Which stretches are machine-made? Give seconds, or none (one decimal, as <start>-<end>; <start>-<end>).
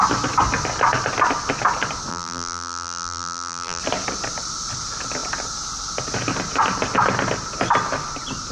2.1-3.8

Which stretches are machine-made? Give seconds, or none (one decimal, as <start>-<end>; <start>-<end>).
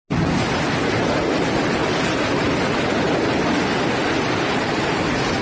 none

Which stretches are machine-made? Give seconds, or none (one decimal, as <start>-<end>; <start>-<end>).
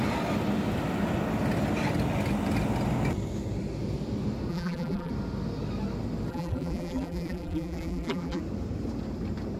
4.5-5.1; 6.3-8.4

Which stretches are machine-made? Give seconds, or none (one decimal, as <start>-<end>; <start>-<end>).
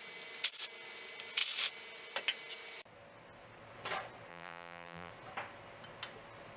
4.3-5.1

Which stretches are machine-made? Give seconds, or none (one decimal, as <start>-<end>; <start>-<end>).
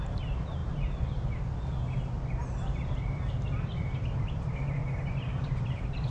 0.0-0.6; 4.3-4.8; 5.4-6.1